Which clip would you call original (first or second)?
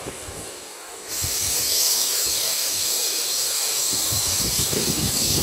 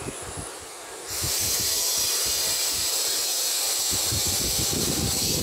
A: second